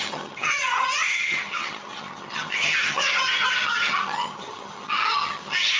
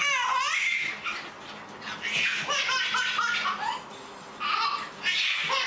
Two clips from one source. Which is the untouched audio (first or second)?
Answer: second